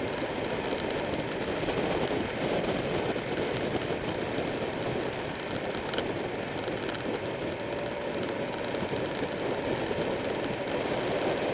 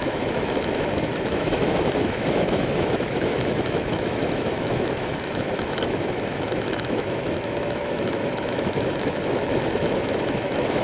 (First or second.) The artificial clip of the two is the second